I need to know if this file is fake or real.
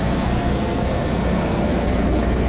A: fake